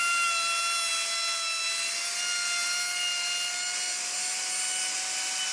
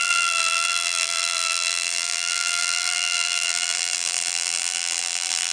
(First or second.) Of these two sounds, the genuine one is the first